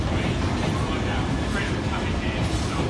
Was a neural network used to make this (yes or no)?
no